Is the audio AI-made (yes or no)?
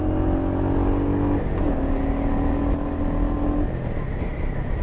no